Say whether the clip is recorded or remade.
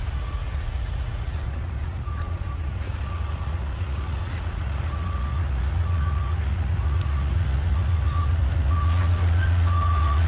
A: remade